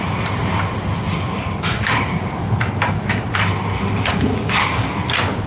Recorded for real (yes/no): yes